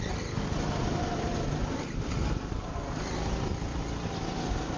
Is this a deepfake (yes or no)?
no